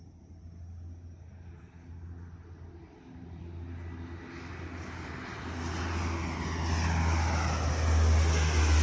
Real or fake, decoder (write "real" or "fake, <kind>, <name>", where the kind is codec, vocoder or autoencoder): real